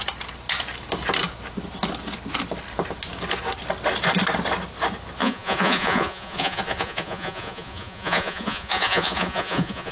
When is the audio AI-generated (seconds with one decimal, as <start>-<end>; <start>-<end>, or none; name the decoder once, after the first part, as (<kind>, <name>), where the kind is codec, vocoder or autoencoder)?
5.2-9.9 (vocoder, Vocos)